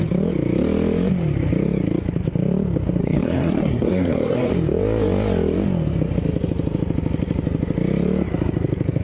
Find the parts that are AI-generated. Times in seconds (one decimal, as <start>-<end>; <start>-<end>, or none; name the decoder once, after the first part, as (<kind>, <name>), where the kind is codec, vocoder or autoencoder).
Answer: 3.0-4.5 (codec, SNAC)